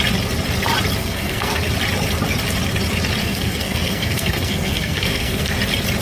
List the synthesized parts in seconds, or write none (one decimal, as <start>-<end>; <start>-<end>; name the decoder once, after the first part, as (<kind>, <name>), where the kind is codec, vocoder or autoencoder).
1.0-1.7 (codec, SNAC); 3.2-5.6